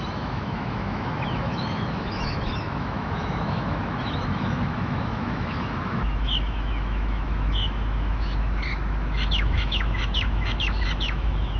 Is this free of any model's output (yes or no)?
no